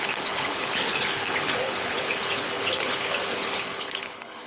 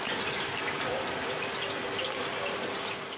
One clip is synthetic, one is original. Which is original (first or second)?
second